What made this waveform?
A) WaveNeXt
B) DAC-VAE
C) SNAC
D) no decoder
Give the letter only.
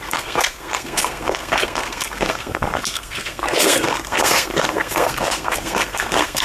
C